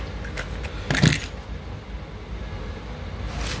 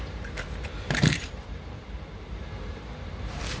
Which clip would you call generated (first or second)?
second